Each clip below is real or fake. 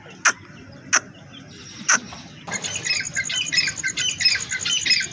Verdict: real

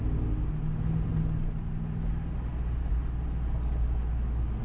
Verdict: real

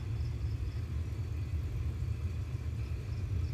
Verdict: real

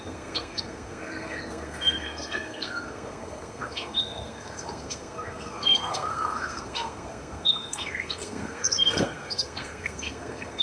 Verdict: fake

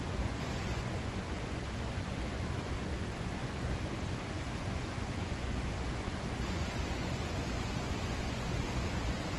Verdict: fake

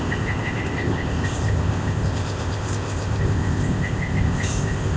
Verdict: fake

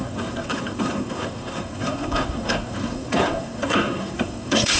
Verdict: fake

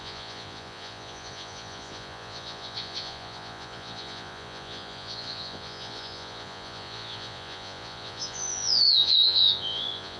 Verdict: fake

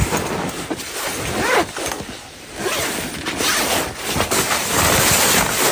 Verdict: real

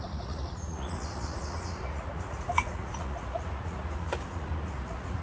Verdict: fake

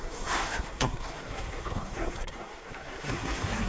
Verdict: fake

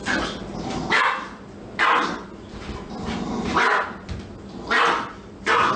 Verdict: real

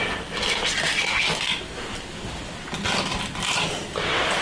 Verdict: real